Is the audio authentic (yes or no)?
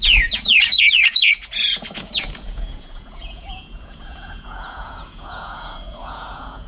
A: no